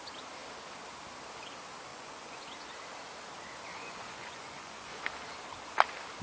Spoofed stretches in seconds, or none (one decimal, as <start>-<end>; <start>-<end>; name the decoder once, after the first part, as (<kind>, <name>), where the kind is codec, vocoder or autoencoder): 1.9-2.4 (vocoder, Vocos); 3.7-5.1